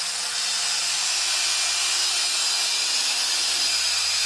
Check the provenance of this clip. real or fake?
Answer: real